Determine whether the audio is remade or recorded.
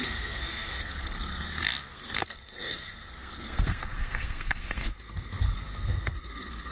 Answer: remade